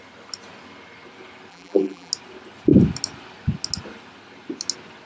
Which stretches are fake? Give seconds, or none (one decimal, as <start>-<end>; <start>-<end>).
1.5-2.1